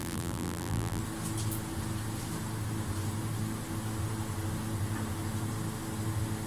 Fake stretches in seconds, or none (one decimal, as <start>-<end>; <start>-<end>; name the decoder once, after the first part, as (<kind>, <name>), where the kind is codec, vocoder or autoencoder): 0.0-1.0 (vocoder, BigVGAN v2)